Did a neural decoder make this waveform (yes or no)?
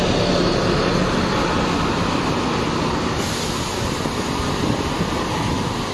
no